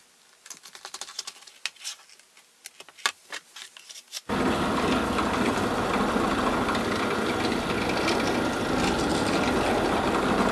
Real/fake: real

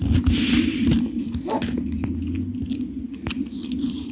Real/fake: real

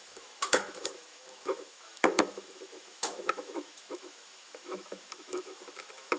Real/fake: fake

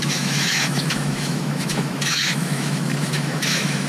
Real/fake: fake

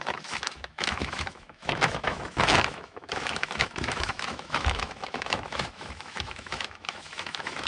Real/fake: fake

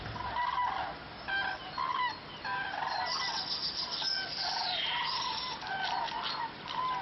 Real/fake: real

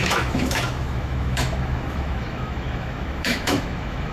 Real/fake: fake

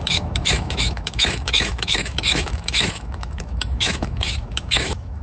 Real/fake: fake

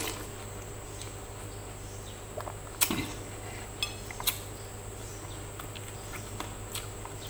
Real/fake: real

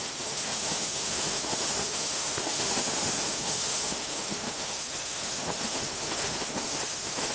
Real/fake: fake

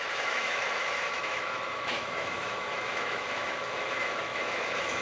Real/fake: fake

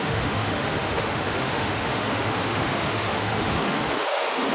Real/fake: fake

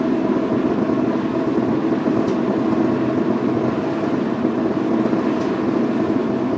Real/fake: real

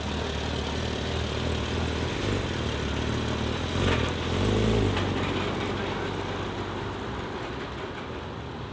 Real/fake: real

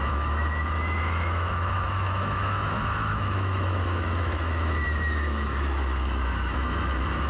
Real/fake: fake